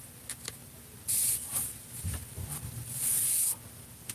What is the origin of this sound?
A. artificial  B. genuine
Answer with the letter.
B